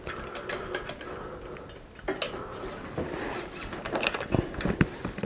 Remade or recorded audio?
recorded